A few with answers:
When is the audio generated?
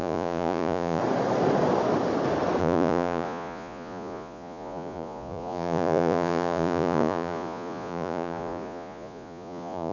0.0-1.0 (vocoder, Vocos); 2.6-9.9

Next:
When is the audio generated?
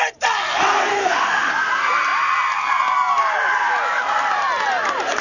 0.9-1.5 (autoencoder, DAC-VAE)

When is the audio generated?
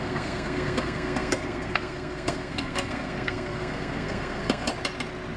0.0-4.7 (codec, SNAC)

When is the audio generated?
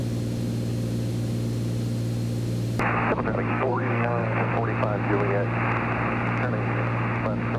3.5-4.5 (codec, SNAC)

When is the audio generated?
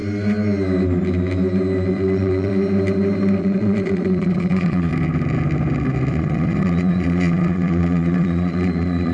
1.9-2.5 (vocoder, Vocos); 3.4-4.9; 6.1-9.1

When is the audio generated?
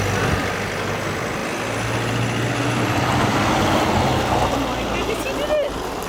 none